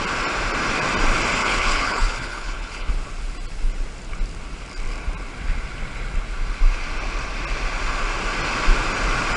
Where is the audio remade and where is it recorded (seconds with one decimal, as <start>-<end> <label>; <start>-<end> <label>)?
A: 0.0-1.4 recorded; 1.4-2.9 remade; 2.9-9.4 recorded